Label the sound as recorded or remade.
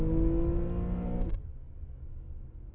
recorded